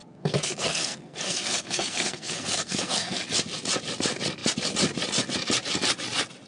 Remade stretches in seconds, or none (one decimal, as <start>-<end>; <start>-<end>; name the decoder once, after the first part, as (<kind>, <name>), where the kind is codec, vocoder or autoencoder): 0.0-3.2 (codec, SNAC)